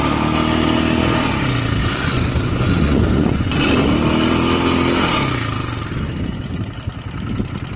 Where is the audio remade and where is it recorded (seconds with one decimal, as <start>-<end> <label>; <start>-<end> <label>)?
0.0-1.8 recorded; 1.8-3.8 remade; 3.8-7.8 recorded